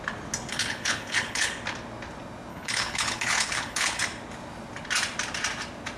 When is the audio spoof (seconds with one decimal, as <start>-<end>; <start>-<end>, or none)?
0.5-1.5; 2.5-4.0